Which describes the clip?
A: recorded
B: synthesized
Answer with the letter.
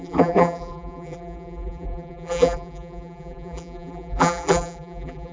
B